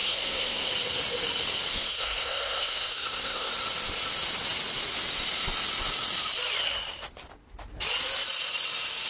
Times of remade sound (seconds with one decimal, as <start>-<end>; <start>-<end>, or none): 0.0-0.7; 1.7-3.5